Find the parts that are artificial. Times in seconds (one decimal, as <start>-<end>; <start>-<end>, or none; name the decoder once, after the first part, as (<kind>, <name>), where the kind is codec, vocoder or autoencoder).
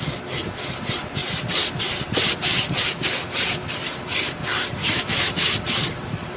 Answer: 4.8-5.5 (autoencoder, DAC-VAE)